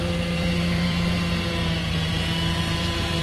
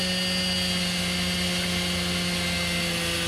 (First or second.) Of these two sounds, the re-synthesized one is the first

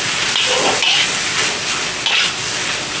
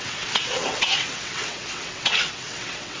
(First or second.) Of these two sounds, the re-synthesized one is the second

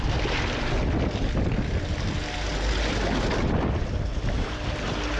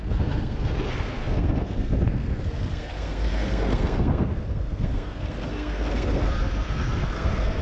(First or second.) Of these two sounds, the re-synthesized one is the second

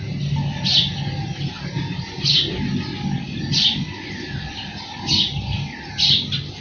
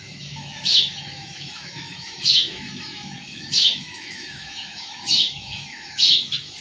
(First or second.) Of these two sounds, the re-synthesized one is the second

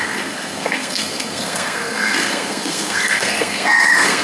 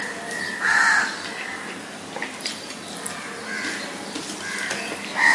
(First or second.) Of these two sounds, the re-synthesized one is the first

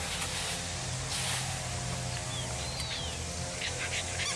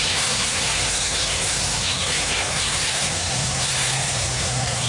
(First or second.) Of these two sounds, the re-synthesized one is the second